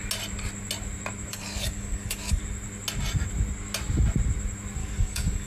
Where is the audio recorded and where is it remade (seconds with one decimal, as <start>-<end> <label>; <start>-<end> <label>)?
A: 0.0-1.3 recorded; 1.3-2.4 remade; 2.4-4.8 recorded; 4.8-5.5 remade